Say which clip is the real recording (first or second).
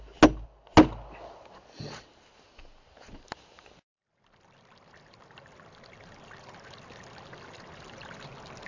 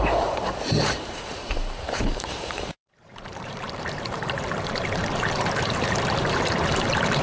first